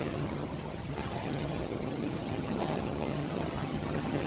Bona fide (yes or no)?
no